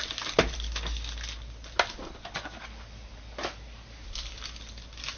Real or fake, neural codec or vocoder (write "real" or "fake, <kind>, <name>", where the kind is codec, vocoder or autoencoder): real